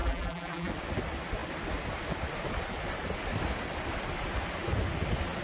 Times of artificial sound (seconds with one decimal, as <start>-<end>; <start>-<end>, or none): 0.0-0.7

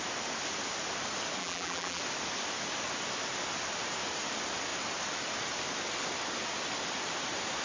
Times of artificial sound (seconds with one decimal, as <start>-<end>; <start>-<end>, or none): 1.4-2.0

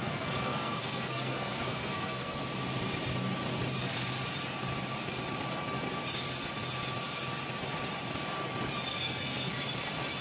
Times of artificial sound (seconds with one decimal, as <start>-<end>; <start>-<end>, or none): 0.0-2.4; 8.9-9.5

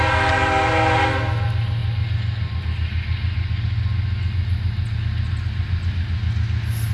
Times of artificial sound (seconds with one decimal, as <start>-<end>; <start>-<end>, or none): none

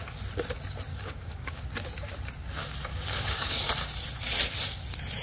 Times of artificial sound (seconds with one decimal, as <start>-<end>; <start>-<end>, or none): 0.9-1.6; 2.9-3.7

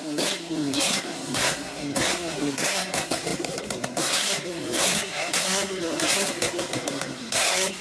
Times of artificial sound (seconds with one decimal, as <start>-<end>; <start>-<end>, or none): 0.0-7.8

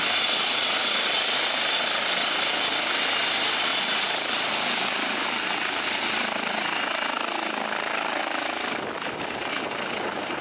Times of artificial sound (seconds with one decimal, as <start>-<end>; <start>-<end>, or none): none